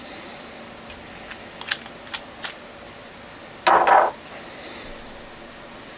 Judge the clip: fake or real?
real